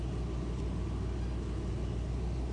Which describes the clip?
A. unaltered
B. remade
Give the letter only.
A